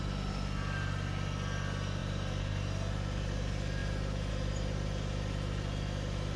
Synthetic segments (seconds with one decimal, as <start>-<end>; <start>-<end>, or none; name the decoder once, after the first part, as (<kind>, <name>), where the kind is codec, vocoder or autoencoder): 2.0-2.5 (vocoder, BigVGAN v2)

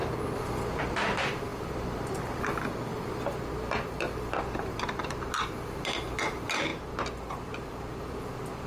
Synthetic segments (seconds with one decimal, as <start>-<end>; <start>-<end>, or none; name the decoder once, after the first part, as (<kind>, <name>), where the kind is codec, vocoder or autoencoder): 0.9-2.9 (vocoder, BigVGAN v2); 4.4-8.7

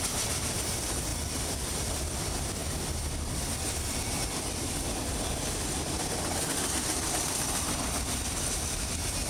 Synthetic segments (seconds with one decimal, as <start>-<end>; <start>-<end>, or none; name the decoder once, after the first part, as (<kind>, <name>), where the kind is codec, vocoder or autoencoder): 0.0-9.3 (vocoder, BigVGAN v2)

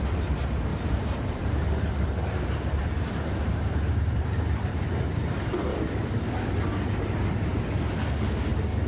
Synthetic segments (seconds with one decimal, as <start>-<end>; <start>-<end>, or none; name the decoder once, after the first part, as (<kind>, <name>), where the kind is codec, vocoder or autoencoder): 0.7-5.2 (vocoder, BigVGAN v2); 5.7-6.3